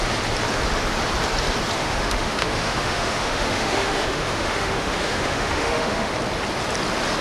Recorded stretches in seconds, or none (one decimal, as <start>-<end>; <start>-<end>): 0.0-1.8; 6.1-7.2